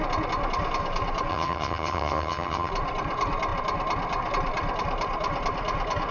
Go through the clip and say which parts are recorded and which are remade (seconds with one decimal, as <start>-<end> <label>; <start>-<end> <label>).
0.0-1.3 recorded; 1.3-2.7 remade; 2.7-6.1 recorded